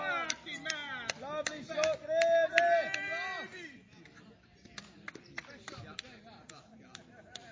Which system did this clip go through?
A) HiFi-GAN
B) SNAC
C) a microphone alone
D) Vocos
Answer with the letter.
C